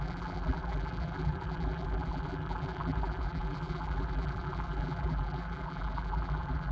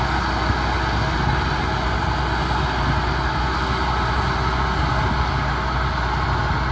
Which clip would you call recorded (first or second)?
second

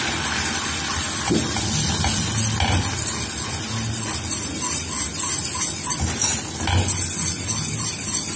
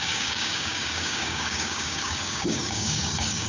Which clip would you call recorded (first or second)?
first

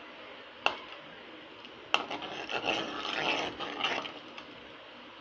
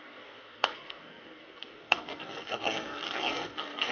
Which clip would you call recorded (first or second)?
first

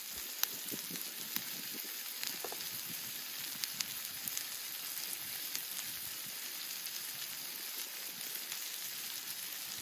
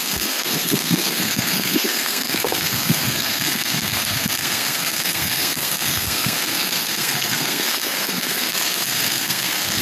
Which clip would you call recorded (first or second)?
first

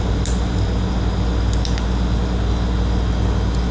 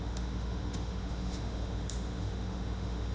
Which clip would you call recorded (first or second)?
first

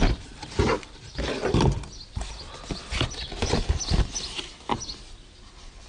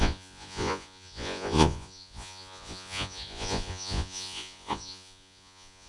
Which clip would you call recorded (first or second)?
first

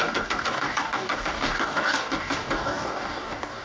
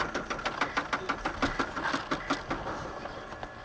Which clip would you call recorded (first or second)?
second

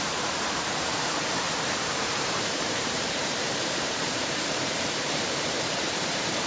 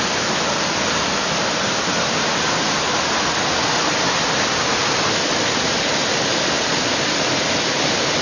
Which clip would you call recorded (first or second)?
second